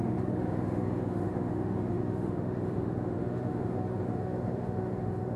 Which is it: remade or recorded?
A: remade